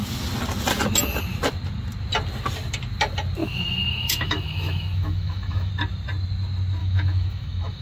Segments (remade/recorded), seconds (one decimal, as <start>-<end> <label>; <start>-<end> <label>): 0.0-3.4 recorded; 3.4-5.7 remade; 5.7-6.8 recorded; 6.8-7.8 remade